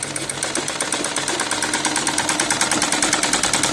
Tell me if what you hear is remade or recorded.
recorded